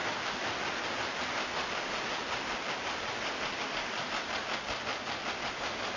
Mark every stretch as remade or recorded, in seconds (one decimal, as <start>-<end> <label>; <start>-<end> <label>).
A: 0.0-3.6 remade; 3.6-4.9 recorded; 4.9-5.4 remade; 5.4-6.0 recorded